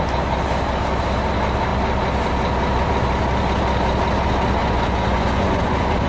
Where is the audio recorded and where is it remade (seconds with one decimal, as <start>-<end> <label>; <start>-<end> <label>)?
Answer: 0.0-4.6 recorded; 4.6-6.1 remade